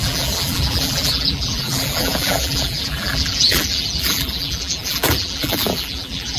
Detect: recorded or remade remade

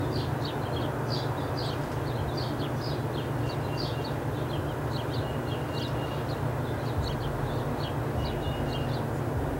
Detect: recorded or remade recorded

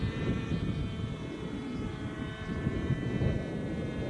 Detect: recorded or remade recorded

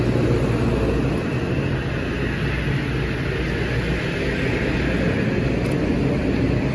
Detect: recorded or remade recorded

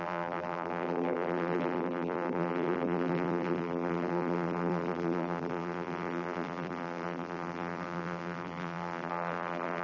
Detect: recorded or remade remade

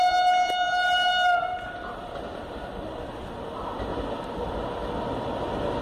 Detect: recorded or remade recorded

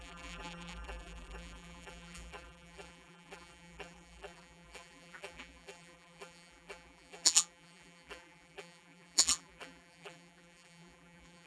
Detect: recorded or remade remade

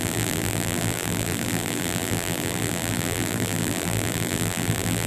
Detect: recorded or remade remade